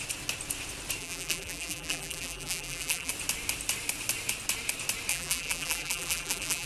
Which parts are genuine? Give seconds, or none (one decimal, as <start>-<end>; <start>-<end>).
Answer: 0.0-1.0; 3.1-5.1